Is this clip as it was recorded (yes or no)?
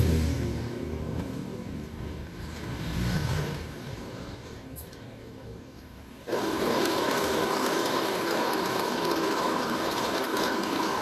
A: no